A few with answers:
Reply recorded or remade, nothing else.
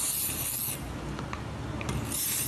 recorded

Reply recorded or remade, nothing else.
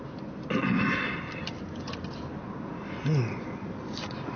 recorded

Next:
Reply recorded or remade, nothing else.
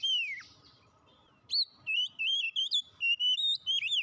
recorded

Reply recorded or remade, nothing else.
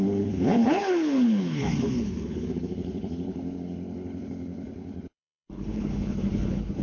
remade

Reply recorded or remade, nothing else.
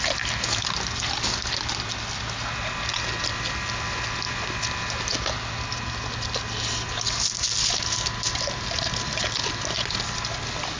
recorded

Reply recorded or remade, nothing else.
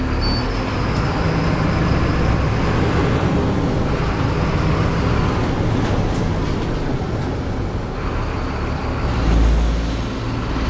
recorded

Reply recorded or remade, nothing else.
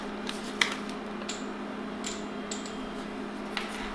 recorded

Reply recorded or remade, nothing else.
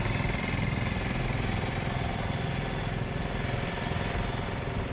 recorded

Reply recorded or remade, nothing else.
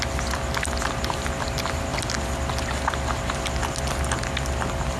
recorded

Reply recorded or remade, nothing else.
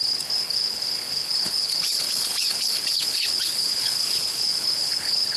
remade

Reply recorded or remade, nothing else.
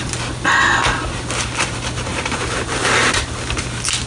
recorded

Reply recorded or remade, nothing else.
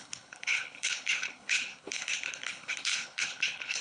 remade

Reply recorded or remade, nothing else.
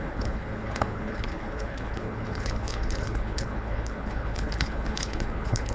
remade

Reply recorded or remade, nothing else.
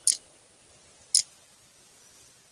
recorded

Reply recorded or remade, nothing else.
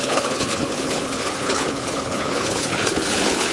remade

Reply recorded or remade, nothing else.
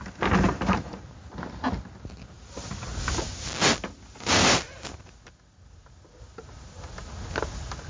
recorded